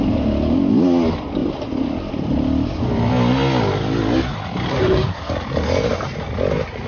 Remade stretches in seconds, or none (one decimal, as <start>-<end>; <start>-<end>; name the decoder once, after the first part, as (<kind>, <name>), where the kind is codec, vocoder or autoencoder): 4.7-5.3 (codec, SNAC)

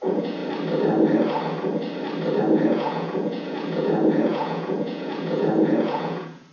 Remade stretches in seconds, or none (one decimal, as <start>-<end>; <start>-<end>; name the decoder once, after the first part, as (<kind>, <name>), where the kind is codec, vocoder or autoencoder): 0.0-0.4 (vocoder, Vocos); 2.4-6.5

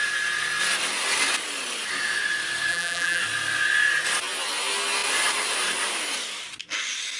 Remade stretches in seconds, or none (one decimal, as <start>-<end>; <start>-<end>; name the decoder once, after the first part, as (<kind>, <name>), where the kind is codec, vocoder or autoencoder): 2.7-3.2 (vocoder, BigVGAN v2)

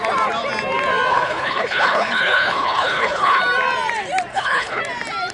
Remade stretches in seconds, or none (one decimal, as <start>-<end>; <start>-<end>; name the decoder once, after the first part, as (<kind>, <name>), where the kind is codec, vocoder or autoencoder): 1.1-3.4 (codec, HILCodec); 4.3-4.8

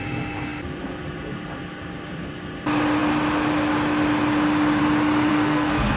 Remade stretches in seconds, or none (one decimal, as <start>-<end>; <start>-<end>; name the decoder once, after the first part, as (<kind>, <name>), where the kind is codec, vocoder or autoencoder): 5.3-6.0 (codec, SNAC)

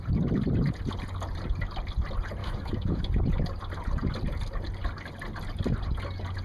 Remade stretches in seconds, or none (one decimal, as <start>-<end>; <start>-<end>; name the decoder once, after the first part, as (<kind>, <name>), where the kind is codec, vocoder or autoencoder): 2.4-3.0 (autoencoder, DAC-VAE)

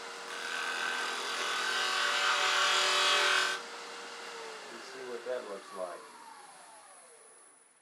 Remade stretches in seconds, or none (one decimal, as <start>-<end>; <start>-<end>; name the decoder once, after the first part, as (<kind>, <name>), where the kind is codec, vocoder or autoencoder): none

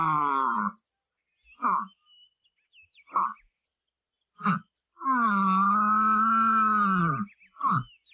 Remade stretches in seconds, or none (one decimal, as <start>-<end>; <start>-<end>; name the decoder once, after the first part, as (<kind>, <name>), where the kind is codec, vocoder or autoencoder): none